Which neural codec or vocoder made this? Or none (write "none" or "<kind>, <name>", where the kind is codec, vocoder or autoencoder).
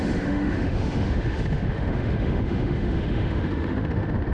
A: autoencoder, DAC-VAE